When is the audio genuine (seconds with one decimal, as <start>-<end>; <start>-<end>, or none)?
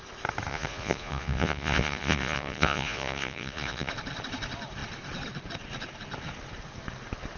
0.0-0.5; 3.9-7.4